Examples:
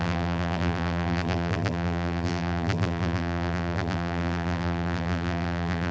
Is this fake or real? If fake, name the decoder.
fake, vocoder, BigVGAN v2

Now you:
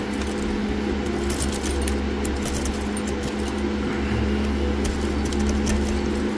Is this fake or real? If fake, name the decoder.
real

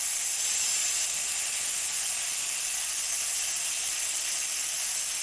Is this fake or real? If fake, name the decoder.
real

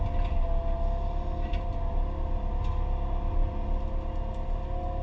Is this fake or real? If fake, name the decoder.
real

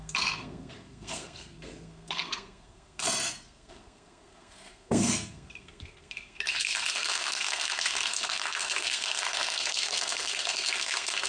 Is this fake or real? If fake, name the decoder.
fake, codec, SNAC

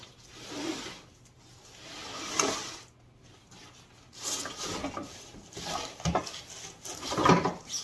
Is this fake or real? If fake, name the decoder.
real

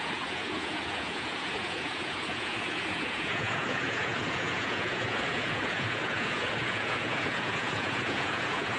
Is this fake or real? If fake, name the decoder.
fake, vocoder, Vocos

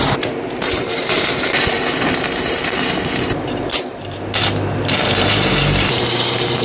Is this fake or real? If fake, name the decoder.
fake, vocoder, BigVGAN v2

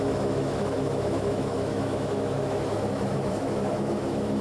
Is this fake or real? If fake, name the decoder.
fake, autoencoder, DAC-VAE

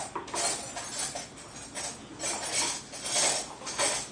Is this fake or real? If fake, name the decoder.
real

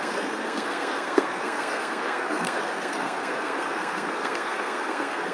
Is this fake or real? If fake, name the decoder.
fake, codec, SNAC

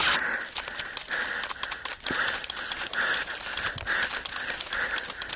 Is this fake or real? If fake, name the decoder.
real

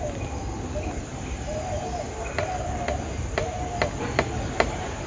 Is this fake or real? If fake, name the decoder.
real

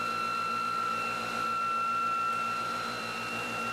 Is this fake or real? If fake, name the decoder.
fake, vocoder, BigVGAN v2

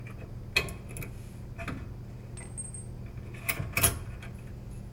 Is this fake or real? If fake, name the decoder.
real